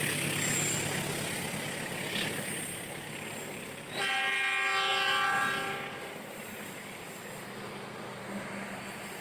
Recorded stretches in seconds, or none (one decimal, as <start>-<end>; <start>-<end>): 0.0-9.2